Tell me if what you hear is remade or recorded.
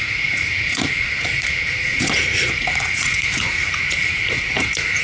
remade